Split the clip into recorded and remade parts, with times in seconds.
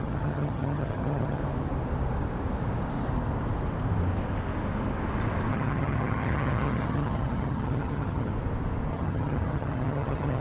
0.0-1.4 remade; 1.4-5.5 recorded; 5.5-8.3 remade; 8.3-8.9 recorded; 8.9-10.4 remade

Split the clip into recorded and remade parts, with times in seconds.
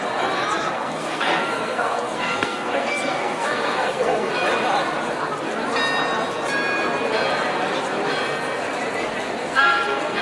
0.0-0.5 recorded; 0.5-4.3 remade; 4.3-9.4 recorded; 9.4-10.2 remade